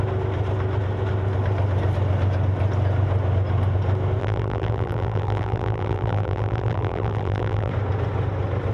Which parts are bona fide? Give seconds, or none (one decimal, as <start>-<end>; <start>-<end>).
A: 0.0-4.2; 7.7-8.7